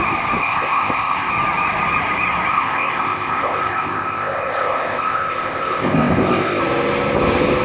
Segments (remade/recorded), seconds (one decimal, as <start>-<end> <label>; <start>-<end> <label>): 0.0-0.4 recorded; 0.4-1.3 remade; 1.3-2.5 recorded; 2.5-6.6 remade; 6.6-7.6 recorded